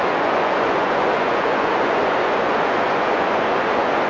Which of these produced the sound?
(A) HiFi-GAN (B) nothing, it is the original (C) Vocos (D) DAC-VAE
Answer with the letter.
C